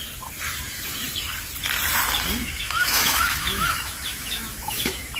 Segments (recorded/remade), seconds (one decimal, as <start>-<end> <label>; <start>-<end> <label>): 0.0-2.4 recorded; 2.4-5.2 remade